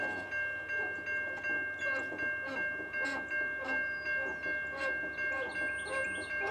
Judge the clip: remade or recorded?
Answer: recorded